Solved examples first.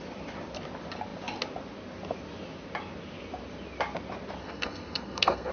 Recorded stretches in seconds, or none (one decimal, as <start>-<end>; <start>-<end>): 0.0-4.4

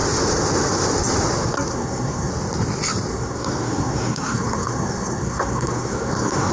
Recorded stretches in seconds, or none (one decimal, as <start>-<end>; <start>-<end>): 0.0-1.7; 2.3-3.1

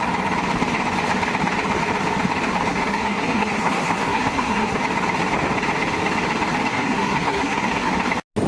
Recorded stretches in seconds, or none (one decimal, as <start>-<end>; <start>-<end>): 0.0-2.7; 4.8-6.7; 7.9-8.5

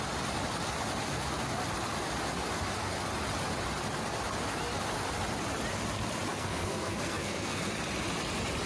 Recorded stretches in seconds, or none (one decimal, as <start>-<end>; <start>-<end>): 0.0-6.3; 7.6-8.7

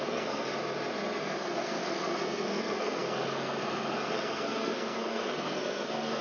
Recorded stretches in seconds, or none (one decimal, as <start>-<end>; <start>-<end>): 0.5-1.2